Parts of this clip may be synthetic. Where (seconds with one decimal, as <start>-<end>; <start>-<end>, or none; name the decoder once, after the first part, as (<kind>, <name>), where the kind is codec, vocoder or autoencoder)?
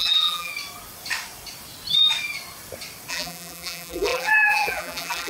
0.0-0.5 (vocoder, BigVGAN v2); 3.1-5.3